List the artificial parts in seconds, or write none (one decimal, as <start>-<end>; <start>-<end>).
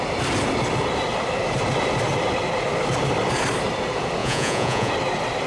4.2-4.9